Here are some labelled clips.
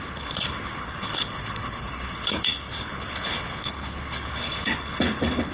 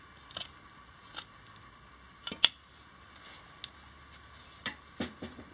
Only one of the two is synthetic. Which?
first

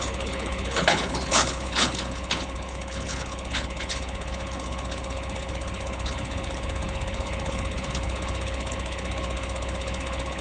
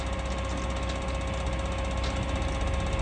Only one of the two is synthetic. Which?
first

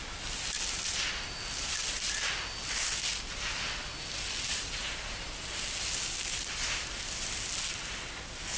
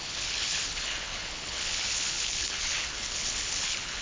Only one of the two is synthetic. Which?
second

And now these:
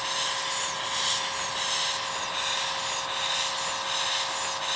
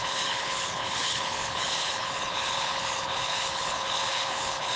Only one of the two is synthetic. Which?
second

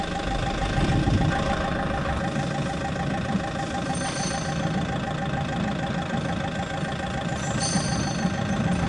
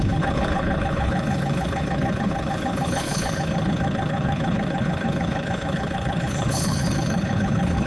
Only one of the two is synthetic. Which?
second